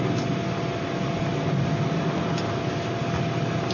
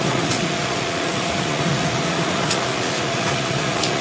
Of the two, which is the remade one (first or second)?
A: second